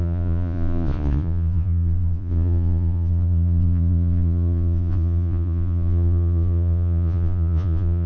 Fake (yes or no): yes